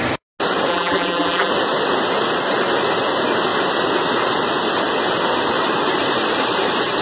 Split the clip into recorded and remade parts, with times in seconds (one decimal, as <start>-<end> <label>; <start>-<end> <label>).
0.0-0.7 recorded; 0.7-1.5 remade; 1.5-7.0 recorded